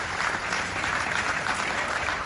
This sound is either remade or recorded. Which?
remade